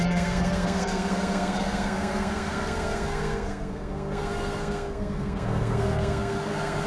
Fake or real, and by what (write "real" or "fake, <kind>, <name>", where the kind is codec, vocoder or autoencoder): fake, codec, SNAC